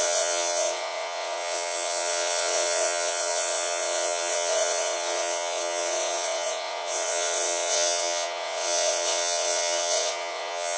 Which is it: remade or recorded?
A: remade